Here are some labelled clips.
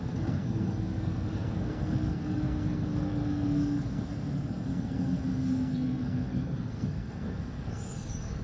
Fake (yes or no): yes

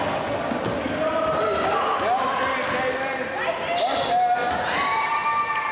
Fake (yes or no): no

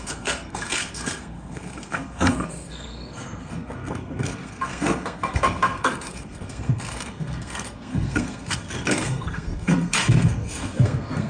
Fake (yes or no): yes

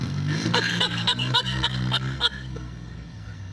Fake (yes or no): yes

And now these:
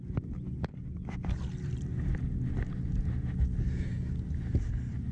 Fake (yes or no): no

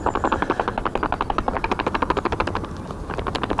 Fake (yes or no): no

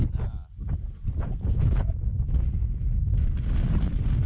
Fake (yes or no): no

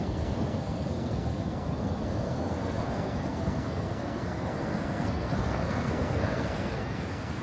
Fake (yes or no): yes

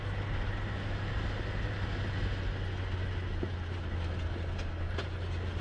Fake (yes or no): no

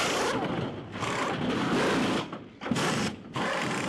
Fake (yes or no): no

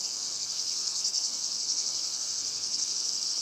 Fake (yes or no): yes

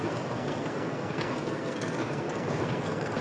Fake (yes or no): yes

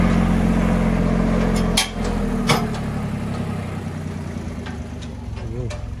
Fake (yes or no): no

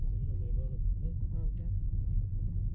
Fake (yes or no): no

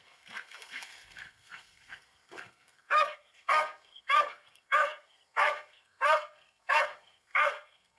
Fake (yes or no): yes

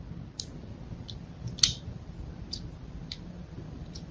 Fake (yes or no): no